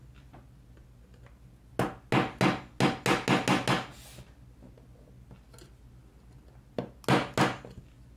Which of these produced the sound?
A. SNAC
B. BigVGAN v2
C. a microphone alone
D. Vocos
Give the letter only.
C